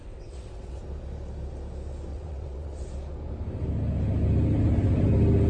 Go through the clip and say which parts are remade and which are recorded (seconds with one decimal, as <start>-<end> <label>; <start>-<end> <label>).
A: 0.0-0.8 remade; 0.8-2.1 recorded; 2.1-2.9 remade; 2.9-5.5 recorded